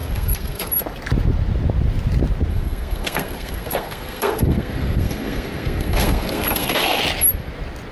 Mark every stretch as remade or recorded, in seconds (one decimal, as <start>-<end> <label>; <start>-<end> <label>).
0.0-0.7 remade; 0.7-2.5 recorded; 2.5-7.0 remade; 7.0-7.9 recorded